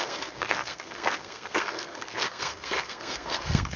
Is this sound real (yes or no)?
no